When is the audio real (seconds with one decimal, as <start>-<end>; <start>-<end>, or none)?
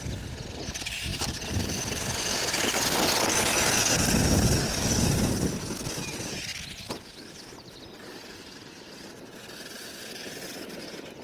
0.0-11.2